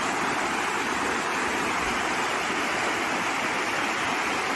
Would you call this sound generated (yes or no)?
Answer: no